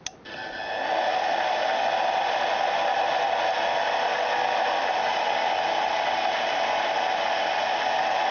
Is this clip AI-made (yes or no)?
no